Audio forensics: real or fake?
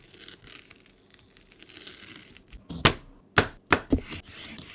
real